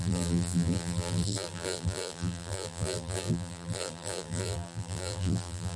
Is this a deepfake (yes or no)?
yes